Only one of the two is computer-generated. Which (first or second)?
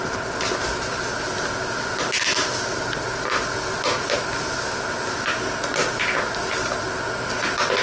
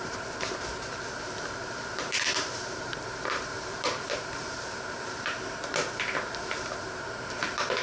second